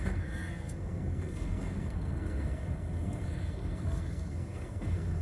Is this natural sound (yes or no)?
no